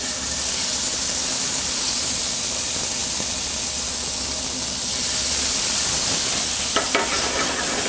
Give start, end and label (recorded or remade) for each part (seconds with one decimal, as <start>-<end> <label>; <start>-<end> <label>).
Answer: 0.0-7.9 recorded